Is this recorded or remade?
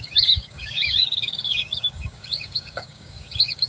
remade